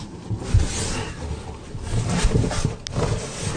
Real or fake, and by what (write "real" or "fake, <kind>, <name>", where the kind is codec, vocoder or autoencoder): real